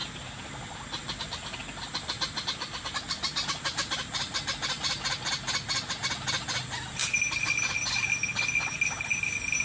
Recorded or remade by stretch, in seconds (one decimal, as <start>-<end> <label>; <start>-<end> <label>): 0.0-0.6 remade; 0.6-9.6 recorded